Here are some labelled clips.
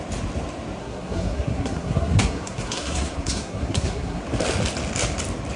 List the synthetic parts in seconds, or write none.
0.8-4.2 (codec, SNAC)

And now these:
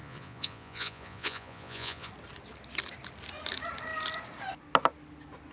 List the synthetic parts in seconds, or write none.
0.0-2.1 (vocoder, Vocos)

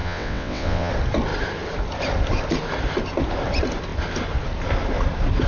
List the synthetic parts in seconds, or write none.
0.0-0.9 (vocoder, WaveNeXt)

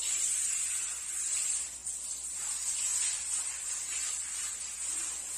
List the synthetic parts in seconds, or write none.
0.0-5.4 (vocoder, BigVGAN v2)